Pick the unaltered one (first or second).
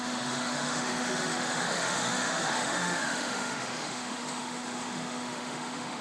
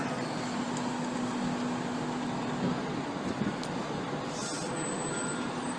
second